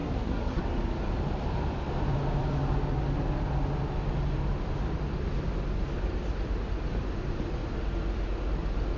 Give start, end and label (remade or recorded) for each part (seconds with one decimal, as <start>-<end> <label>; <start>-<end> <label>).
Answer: 0.0-0.6 remade; 0.6-9.0 recorded